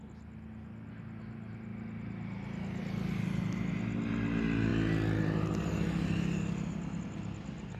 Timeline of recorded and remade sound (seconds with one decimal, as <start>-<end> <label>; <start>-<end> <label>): 0.0-7.8 recorded